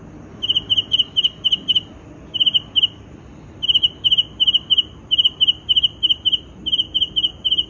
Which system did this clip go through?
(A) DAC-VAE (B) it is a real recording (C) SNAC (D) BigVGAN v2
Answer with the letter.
B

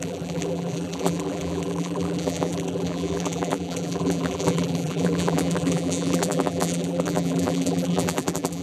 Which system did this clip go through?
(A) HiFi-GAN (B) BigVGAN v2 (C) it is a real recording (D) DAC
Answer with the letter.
B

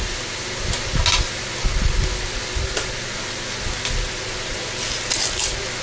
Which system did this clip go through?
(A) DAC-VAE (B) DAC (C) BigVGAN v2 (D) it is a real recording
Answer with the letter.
D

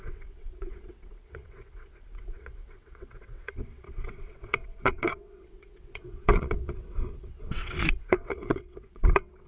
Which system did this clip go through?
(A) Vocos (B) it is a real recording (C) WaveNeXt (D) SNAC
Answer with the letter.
C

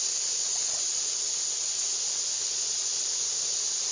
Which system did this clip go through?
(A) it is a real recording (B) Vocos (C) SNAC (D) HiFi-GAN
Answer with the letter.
A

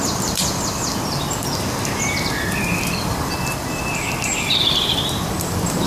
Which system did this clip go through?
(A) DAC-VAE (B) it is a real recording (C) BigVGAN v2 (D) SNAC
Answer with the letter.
B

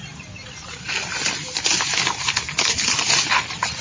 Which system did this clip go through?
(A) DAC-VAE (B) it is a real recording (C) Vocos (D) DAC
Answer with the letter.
B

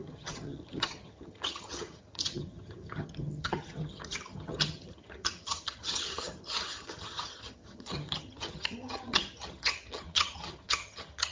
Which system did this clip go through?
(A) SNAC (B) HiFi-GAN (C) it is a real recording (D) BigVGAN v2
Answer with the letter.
B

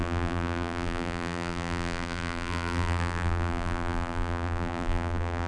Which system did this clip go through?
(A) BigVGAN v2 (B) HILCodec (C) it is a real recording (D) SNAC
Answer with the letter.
A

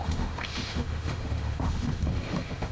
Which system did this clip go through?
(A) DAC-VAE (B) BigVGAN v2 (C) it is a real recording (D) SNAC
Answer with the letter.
A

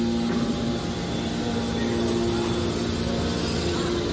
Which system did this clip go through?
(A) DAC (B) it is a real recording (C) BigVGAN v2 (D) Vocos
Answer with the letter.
B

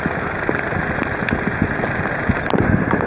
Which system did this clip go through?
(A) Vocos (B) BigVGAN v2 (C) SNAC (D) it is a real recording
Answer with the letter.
D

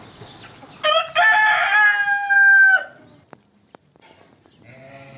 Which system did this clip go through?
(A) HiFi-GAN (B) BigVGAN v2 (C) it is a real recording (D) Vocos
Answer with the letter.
C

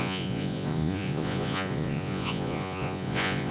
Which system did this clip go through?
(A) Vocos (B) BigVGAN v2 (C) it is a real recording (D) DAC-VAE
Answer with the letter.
A